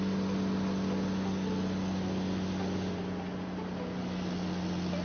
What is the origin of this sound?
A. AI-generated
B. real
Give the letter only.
B